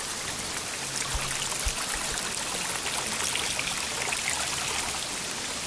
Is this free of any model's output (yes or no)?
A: yes